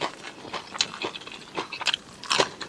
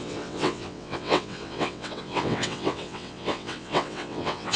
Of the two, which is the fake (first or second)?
second